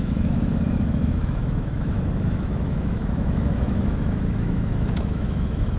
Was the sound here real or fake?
fake